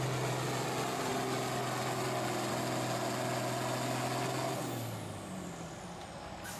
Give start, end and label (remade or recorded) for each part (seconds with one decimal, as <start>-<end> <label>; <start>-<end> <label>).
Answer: 0.0-6.6 recorded